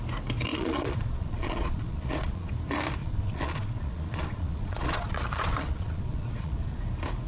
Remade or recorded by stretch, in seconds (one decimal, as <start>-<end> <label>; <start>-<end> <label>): 0.0-0.5 recorded; 0.5-2.5 remade; 2.5-3.0 recorded; 3.0-6.8 remade; 6.8-7.3 recorded